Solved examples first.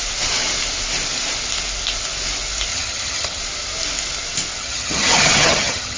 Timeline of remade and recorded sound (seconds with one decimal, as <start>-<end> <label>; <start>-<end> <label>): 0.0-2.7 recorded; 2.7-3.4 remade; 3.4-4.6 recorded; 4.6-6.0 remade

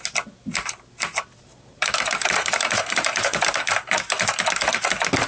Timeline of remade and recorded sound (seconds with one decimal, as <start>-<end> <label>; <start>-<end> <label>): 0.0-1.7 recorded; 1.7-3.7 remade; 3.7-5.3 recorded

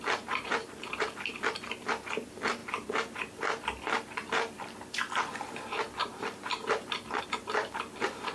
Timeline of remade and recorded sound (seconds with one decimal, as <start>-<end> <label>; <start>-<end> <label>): 0.0-8.3 remade